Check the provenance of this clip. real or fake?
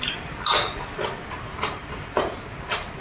real